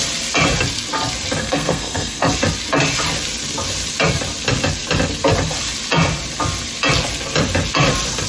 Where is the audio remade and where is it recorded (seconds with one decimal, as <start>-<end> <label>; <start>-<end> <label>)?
0.0-1.4 recorded; 1.4-2.3 remade; 2.3-8.3 recorded